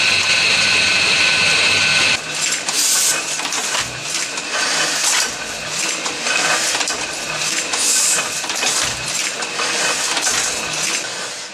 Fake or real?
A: real